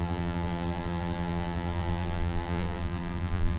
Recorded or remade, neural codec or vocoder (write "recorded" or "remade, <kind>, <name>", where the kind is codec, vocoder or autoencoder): remade, vocoder, BigVGAN v2